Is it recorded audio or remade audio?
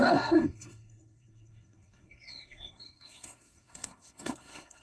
remade